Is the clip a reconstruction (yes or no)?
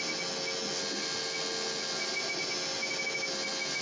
no